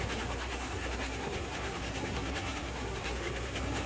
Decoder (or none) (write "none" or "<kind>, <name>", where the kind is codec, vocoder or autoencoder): codec, SNAC